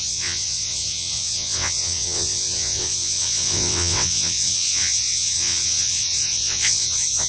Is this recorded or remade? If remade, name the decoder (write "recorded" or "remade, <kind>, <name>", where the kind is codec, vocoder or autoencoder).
remade, vocoder, WaveNeXt